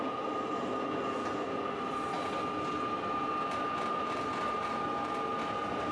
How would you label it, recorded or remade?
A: recorded